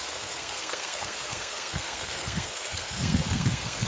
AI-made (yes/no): yes